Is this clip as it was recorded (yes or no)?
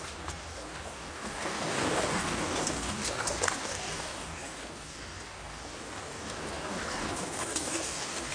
no